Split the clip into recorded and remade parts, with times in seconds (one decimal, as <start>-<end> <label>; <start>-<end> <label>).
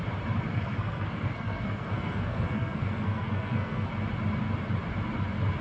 0.0-0.5 recorded; 0.5-3.9 remade; 3.9-5.6 recorded